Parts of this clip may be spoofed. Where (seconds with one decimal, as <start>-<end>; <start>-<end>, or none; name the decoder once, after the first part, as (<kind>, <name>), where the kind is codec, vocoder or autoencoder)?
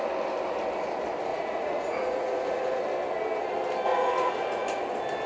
1.3-2.8 (vocoder, Vocos); 3.9-4.8